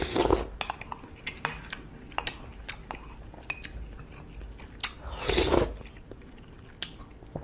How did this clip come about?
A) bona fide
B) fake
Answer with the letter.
A